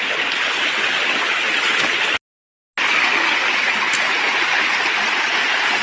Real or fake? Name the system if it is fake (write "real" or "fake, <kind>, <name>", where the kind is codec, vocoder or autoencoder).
real